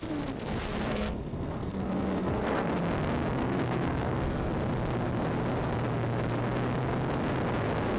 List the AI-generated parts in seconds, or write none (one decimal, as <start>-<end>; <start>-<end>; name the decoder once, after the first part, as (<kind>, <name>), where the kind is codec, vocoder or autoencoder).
0.9-2.7 (codec, SNAC); 3.4-4.5